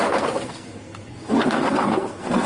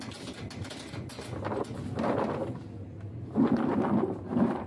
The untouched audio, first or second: second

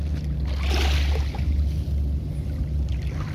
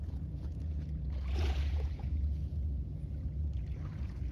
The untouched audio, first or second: first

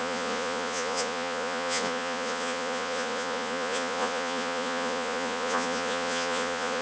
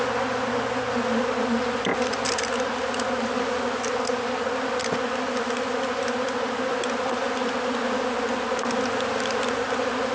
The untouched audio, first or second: second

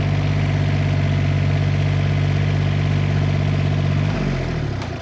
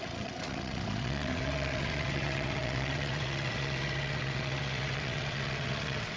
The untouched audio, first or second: first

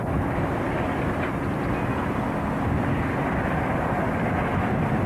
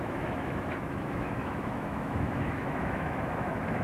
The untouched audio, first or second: first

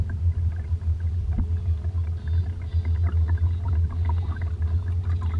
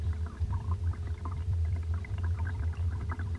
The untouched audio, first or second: first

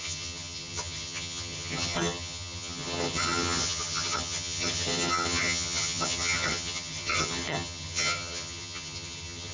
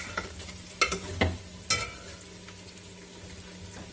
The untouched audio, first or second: second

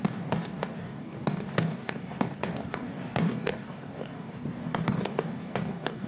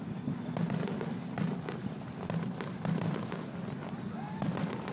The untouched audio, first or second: second